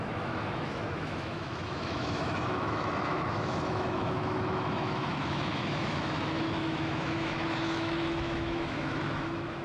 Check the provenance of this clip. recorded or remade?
remade